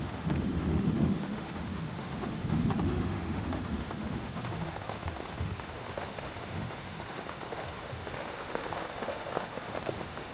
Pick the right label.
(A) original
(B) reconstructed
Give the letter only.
B